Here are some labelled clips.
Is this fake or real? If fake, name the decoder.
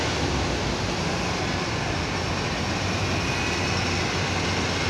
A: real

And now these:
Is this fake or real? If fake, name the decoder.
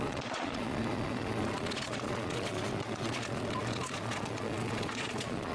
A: fake, vocoder, Vocos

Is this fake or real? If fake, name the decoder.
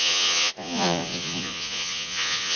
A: fake, vocoder, Vocos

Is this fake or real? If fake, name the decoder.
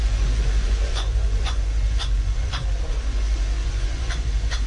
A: fake, vocoder, Vocos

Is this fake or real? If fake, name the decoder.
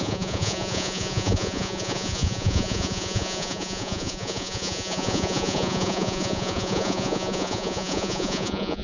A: fake, vocoder, Vocos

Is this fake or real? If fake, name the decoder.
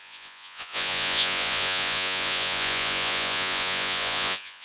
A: fake, vocoder, Vocos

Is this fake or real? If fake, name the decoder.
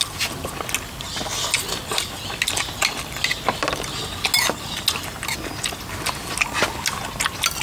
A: real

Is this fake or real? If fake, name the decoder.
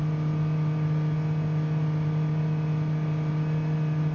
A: real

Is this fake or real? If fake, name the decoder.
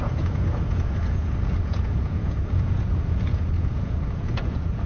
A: fake, vocoder, Vocos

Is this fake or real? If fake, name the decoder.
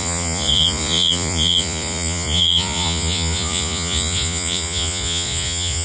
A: fake, vocoder, Vocos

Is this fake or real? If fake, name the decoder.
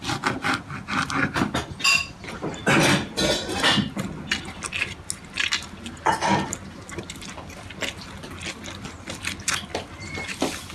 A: real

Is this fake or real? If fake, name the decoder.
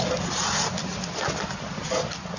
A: real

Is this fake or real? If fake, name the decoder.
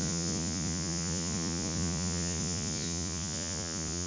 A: fake, vocoder, Vocos